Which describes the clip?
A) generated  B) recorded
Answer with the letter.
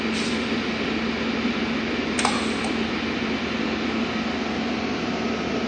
B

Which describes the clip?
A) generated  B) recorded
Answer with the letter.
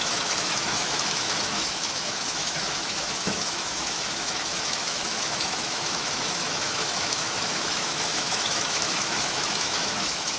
A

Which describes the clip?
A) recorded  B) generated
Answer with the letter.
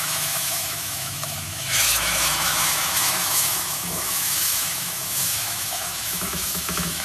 B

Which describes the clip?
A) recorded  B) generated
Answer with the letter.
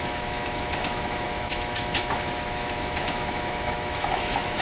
B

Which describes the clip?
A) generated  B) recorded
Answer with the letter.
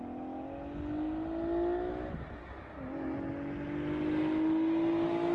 B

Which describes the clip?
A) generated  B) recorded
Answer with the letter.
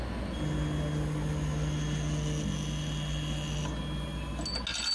B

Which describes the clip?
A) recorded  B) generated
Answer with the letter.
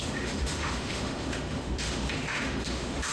B